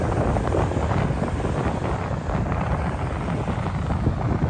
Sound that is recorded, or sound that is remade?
recorded